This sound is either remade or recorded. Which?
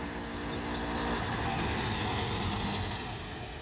recorded